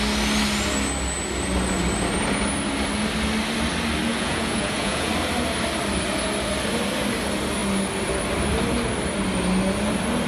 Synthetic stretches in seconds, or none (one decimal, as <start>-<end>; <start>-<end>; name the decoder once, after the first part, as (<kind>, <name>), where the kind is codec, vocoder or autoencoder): 4.1-5.1 (vocoder, Vocos)